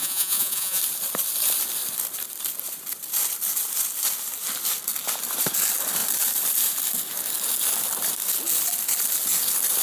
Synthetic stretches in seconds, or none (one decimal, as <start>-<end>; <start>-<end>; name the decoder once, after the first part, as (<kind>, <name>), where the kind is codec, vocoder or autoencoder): 0.0-0.8 (vocoder, Vocos)